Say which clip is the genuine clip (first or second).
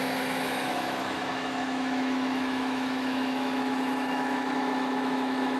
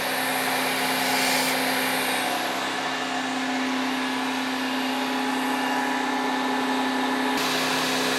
second